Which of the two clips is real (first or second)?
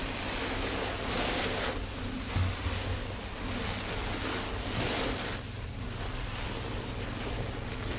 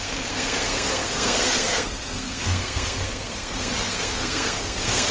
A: first